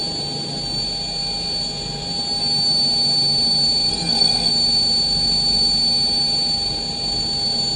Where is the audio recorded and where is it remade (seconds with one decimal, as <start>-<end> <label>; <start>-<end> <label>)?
0.0-3.9 recorded; 3.9-4.5 remade; 4.5-7.8 recorded